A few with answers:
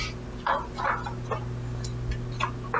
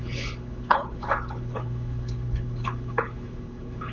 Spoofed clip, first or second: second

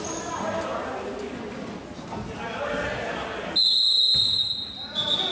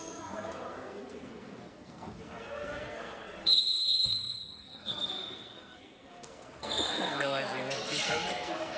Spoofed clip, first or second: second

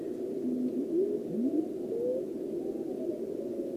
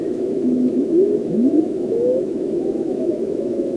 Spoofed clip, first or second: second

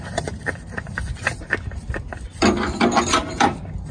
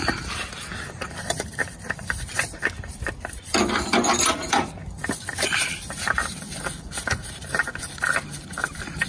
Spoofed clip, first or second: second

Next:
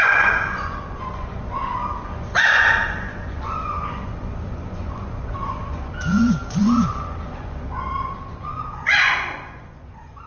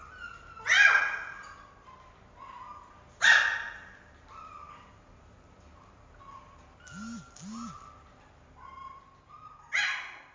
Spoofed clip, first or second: first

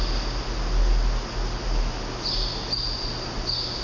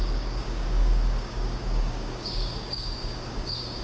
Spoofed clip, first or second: second